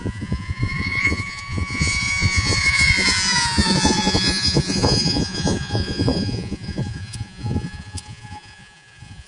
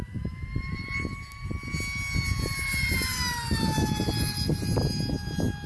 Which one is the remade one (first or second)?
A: first